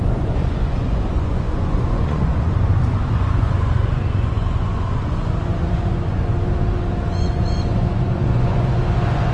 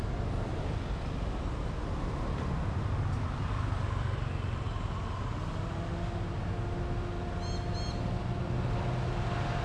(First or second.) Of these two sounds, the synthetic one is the first